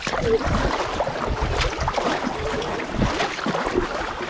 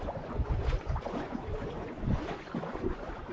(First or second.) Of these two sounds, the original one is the first